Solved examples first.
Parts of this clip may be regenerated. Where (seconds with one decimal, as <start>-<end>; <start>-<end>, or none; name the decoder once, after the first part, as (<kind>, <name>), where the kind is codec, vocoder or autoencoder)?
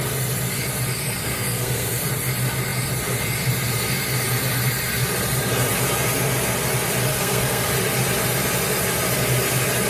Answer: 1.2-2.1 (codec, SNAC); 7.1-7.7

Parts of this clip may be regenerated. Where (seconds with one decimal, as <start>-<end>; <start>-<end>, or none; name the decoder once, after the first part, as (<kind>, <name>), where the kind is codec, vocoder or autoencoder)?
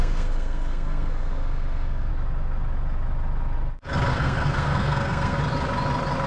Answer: 0.0-2.1 (codec, SNAC); 4.1-5.4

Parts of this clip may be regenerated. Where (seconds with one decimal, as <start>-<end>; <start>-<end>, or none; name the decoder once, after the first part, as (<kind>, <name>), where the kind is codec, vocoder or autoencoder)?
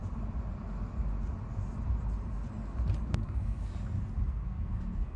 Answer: 3.0-3.7 (codec, SNAC); 4.3-5.2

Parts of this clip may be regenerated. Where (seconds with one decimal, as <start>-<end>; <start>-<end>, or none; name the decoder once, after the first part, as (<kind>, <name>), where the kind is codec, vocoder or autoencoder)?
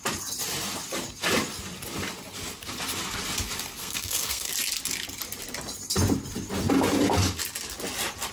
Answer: 3.8-4.5 (codec, SNAC)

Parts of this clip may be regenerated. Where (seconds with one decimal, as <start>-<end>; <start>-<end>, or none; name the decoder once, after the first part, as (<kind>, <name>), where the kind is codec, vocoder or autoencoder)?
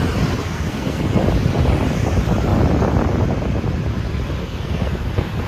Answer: 0.4-1.2 (codec, SNAC); 4.4-5.5